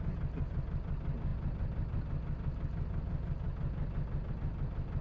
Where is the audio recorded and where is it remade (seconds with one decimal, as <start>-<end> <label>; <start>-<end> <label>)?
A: 0.0-5.0 recorded